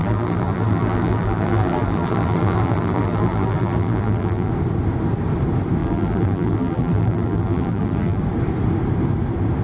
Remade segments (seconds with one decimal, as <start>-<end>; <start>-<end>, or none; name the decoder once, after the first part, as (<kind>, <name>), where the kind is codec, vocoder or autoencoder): 0.0-4.5 (vocoder, BigVGAN v2); 5.8-8.2

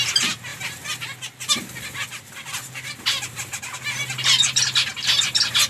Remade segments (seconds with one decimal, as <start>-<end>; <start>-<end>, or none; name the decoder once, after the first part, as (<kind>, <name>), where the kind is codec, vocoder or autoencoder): 0.5-3.6 (vocoder, BigVGAN v2)

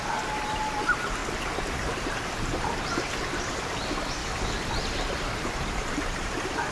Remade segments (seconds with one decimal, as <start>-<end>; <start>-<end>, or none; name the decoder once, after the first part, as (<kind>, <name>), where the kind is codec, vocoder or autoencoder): 4.2-6.7 (vocoder, BigVGAN v2)